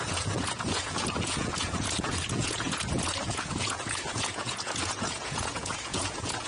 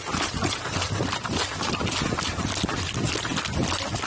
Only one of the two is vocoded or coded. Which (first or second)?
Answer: first